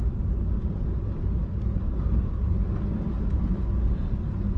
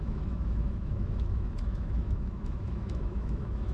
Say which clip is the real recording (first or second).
first